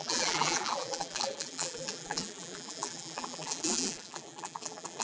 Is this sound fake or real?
fake